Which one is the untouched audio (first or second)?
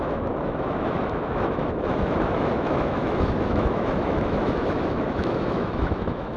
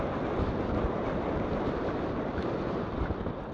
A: second